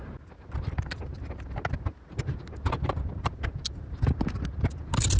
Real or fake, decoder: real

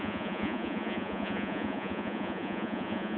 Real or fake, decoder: fake, vocoder, Vocos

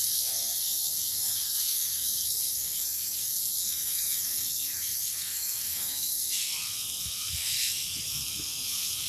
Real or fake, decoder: fake, codec, SNAC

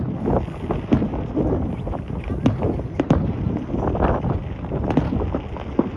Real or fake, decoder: real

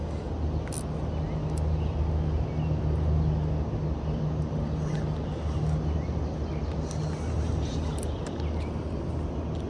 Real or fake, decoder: real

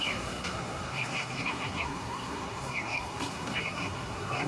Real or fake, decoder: fake, codec, SNAC